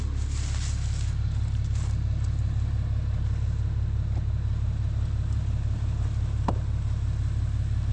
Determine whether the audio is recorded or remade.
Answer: recorded